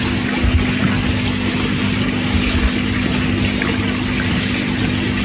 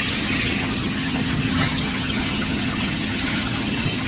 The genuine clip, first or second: first